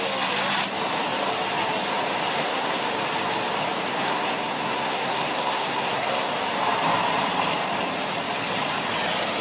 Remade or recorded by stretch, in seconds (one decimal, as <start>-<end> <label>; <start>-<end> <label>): 0.0-2.3 recorded; 2.3-2.9 remade; 2.9-3.9 recorded; 3.9-6.3 remade; 6.3-9.4 recorded